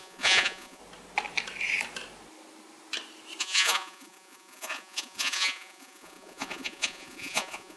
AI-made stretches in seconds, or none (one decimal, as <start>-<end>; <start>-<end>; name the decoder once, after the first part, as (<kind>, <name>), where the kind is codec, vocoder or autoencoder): 0.0-0.8 (vocoder, Vocos); 3.4-7.8